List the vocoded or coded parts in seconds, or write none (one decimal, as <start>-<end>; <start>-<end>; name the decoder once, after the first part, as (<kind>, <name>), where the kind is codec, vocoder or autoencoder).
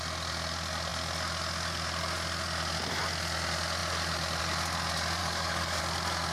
5.2-5.8 (codec, DAC)